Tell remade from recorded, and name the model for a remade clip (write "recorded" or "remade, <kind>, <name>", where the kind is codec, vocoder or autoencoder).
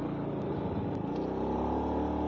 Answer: recorded